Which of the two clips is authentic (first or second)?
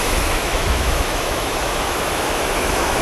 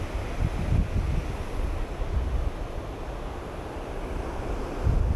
second